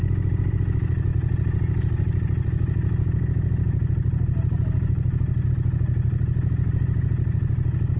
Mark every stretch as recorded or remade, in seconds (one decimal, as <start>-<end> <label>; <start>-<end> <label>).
0.0-8.0 recorded